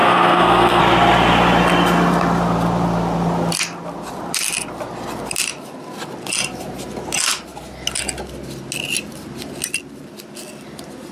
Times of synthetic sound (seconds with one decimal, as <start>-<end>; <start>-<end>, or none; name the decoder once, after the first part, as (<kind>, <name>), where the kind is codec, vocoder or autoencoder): 0.0-0.8 (codec, SNAC)